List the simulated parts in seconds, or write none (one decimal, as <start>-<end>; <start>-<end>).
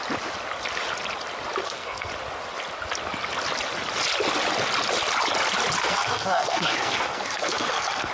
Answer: 1.6-2.1; 5.8-8.1